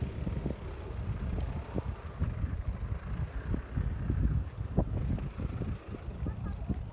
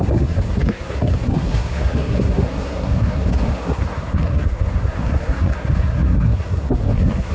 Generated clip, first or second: second